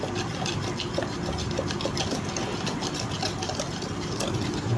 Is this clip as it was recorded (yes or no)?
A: yes